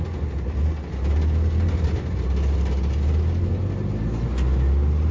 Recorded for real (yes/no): yes